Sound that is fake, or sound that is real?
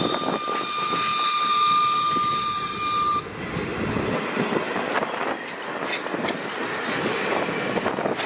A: real